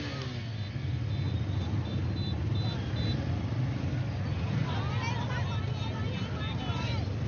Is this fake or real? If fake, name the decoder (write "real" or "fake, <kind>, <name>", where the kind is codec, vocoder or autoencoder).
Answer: real